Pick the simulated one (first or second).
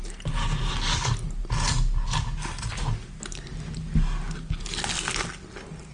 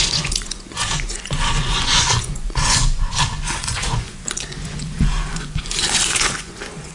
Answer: second